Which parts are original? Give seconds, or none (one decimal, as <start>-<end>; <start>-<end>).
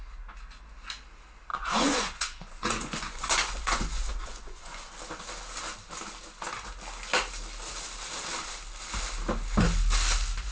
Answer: 0.0-1.5; 4.9-10.5